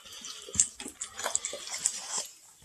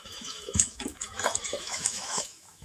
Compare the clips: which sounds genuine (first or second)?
first